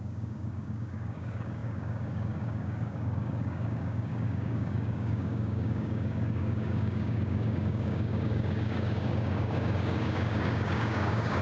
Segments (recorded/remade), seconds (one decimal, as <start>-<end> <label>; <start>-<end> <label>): 0.0-11.4 remade